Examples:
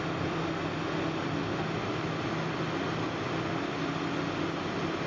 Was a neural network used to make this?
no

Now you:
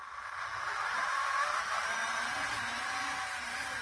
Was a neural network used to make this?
no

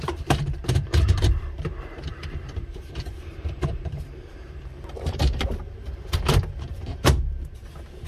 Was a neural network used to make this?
yes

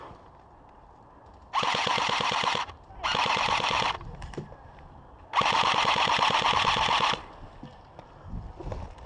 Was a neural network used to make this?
no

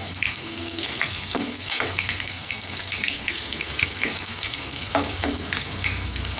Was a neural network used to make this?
yes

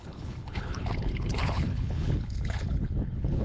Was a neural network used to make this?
yes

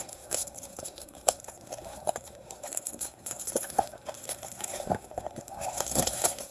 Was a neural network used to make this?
yes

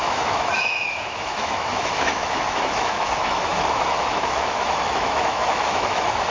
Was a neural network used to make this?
yes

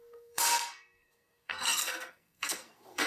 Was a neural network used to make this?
yes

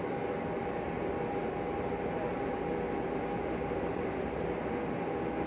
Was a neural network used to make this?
no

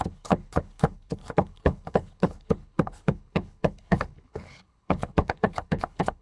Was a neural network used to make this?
yes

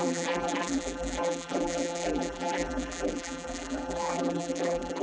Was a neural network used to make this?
yes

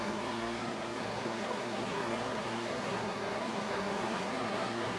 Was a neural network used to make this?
yes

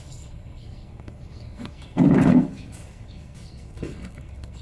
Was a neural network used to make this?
yes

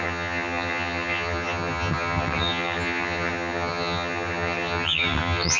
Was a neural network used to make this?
yes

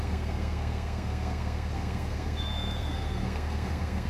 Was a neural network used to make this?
yes